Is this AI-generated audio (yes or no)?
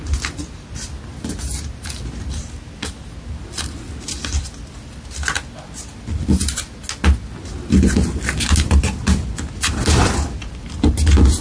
no